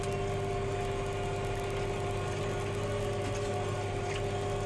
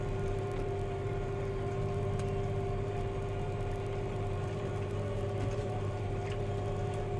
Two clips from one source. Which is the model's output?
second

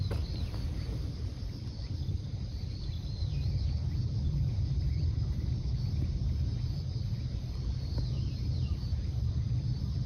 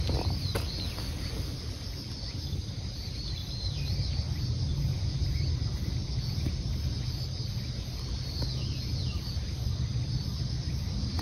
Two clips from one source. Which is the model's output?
first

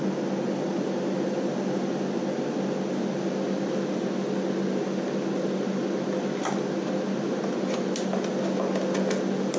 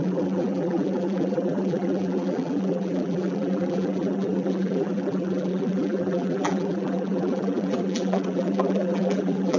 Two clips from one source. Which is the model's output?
second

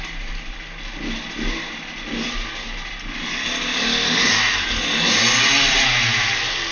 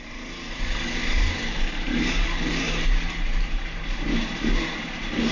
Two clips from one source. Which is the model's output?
second